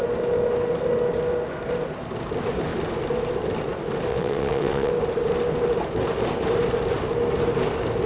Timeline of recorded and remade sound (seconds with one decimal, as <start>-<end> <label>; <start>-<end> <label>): 0.0-4.1 recorded; 4.1-4.9 remade; 4.9-8.1 recorded